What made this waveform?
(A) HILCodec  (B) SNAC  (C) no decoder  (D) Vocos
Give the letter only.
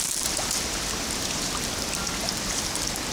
C